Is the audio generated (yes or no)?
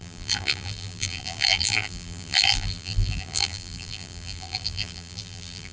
yes